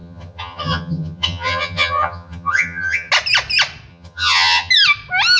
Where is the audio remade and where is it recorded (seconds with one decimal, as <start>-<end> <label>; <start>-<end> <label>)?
0.0-3.1 remade; 3.1-3.9 recorded; 3.9-4.7 remade; 4.7-5.4 recorded